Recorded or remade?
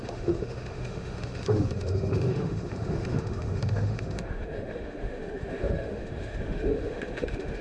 remade